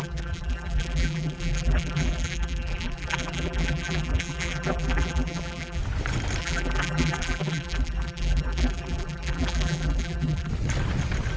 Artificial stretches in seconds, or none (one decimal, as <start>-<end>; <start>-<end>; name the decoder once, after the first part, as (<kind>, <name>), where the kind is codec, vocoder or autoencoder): 0.0-5.8 (vocoder, BigVGAN v2); 6.4-10.5